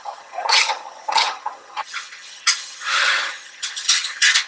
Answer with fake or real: fake